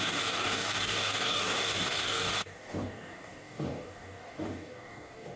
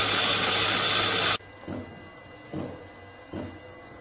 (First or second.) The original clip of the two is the second